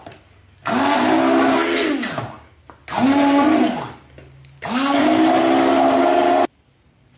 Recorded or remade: recorded